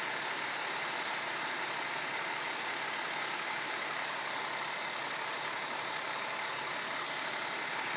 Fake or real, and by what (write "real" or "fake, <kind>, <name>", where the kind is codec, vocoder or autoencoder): real